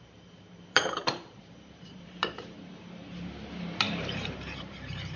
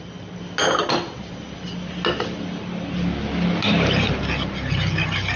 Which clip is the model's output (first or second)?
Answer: first